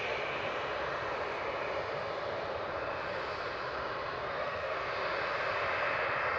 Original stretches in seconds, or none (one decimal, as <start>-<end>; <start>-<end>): 0.0-4.2; 4.9-6.4